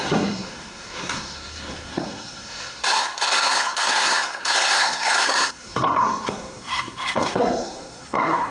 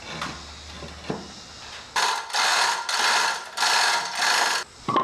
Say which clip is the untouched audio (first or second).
second